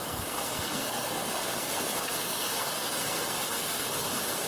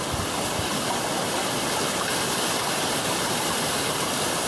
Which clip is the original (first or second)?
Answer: second